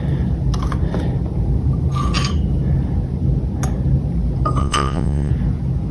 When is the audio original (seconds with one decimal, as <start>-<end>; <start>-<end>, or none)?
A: 0.0-4.6; 5.3-5.9